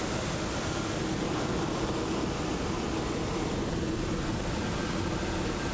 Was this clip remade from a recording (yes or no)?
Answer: no